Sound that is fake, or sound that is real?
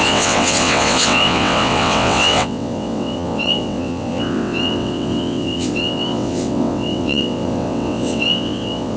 fake